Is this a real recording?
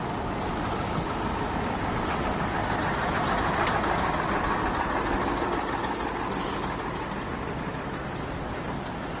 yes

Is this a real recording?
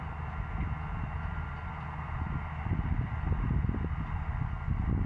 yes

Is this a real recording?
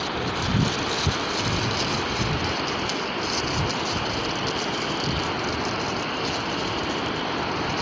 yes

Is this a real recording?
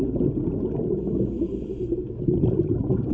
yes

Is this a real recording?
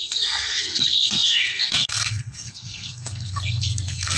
no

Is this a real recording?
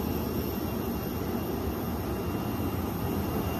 yes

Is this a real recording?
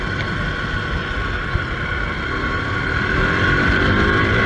yes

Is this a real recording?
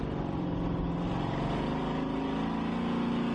yes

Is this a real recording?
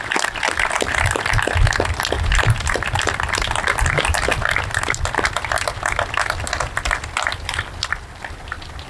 yes